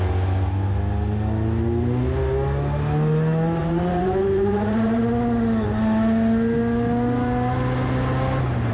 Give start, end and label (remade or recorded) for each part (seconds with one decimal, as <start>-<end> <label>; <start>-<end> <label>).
0.0-3.6 recorded; 3.6-5.0 remade; 5.0-8.7 recorded